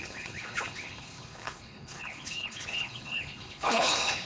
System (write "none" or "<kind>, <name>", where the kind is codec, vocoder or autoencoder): codec, HILCodec